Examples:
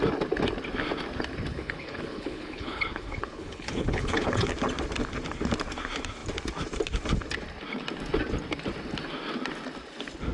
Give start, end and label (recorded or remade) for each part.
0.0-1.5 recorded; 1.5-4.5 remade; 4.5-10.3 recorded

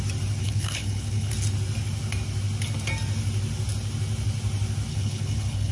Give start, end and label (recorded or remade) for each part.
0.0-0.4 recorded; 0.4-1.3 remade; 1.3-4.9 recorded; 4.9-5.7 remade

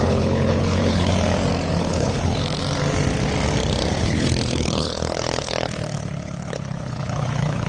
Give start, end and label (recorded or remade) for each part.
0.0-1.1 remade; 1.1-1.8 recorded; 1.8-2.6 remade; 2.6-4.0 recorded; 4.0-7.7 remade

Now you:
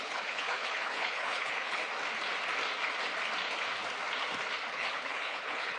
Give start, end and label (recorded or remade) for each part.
0.0-1.8 remade; 1.8-4.7 recorded; 4.7-5.8 remade

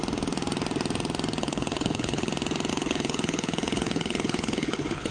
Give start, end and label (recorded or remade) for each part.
0.0-1.4 recorded; 1.4-2.3 remade; 2.3-2.7 recorded; 2.7-5.1 remade

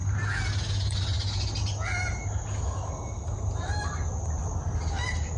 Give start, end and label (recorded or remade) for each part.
0.0-5.4 recorded

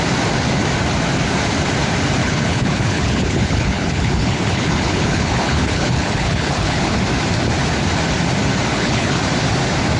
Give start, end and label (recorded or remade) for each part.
0.0-2.2 recorded; 2.2-7.0 remade; 7.0-8.7 recorded; 8.7-9.2 remade; 9.2-10.0 recorded

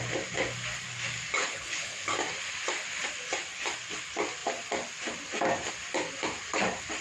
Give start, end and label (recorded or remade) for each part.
0.0-1.4 recorded; 1.4-2.1 remade; 2.1-7.0 recorded